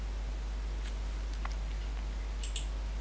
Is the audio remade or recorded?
recorded